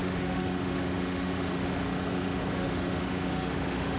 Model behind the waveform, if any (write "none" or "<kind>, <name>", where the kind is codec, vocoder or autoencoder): autoencoder, DAC-VAE